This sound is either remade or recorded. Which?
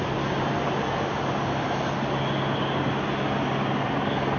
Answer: recorded